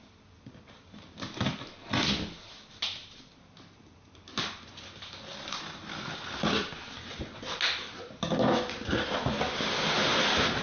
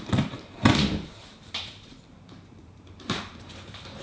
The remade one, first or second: second